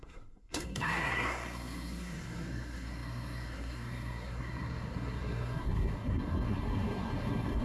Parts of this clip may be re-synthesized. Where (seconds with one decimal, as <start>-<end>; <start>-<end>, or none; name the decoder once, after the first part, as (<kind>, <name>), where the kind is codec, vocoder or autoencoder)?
0.0-7.6 (codec, SNAC)